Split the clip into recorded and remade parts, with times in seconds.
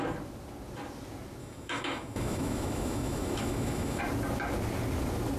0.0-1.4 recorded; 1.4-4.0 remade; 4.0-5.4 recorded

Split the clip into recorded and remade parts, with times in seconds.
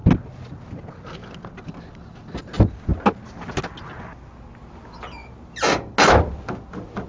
0.0-7.1 recorded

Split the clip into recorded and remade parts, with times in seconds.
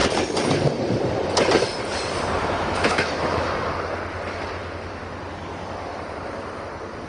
0.0-2.4 recorded; 2.4-3.7 remade; 3.7-7.1 recorded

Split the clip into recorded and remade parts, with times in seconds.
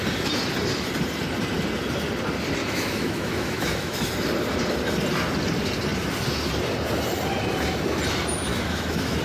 0.0-2.6 recorded; 2.6-4.1 remade; 4.1-8.5 recorded; 8.5-9.2 remade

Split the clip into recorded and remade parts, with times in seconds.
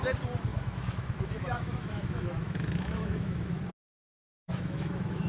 0.0-0.5 recorded; 0.5-3.6 remade; 3.6-4.1 recorded; 4.1-5.3 remade